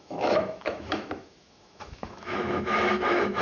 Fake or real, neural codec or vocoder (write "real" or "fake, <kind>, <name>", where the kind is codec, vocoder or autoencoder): fake, autoencoder, DAC-VAE